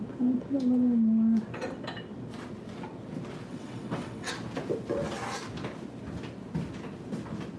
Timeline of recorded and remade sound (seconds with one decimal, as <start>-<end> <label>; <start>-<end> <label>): 0.0-3.5 recorded; 3.5-4.3 remade; 4.3-7.6 recorded